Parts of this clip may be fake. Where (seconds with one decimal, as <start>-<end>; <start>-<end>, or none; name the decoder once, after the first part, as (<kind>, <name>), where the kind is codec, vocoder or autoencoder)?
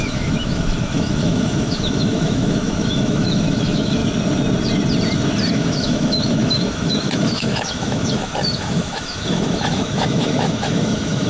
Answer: 0.0-4.0 (autoencoder, DAC-VAE); 5.5-11.3